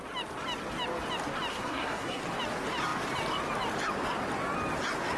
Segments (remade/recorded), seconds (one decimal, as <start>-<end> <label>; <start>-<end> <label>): 0.0-1.5 recorded; 1.5-2.2 remade; 2.2-5.2 recorded